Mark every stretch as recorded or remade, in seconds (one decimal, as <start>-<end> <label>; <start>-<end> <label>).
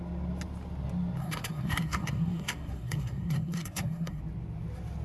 0.0-1.2 recorded; 1.2-4.2 remade; 4.2-5.0 recorded